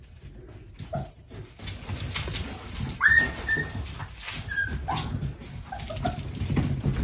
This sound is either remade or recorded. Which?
recorded